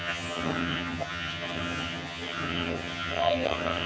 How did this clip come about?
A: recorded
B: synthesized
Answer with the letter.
B